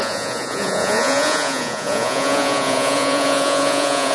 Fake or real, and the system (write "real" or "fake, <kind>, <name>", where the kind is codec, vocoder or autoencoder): fake, vocoder, Vocos